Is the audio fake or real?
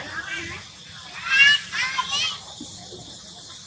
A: real